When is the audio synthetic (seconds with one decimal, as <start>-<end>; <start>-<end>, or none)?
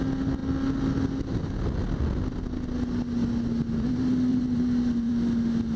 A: 4.3-5.1